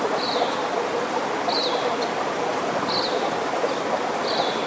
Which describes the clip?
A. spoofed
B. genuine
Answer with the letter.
B